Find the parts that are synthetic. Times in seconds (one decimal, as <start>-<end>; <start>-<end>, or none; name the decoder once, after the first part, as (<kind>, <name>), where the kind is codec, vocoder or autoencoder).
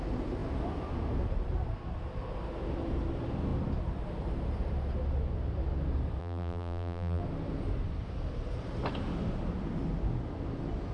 6.2-7.2 (vocoder, BigVGAN v2)